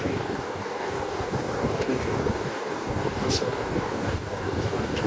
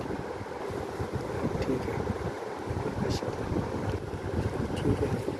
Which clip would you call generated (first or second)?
first